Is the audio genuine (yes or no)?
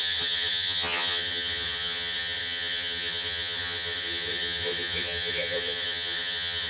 no